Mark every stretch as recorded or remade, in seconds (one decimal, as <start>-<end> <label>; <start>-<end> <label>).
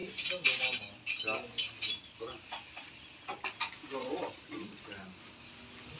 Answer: 0.0-4.0 recorded; 4.0-4.8 remade; 4.8-6.0 recorded